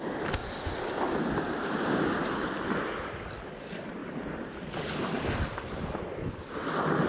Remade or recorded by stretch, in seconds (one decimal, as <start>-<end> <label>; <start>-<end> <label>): 0.0-7.1 recorded